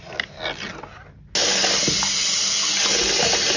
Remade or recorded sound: recorded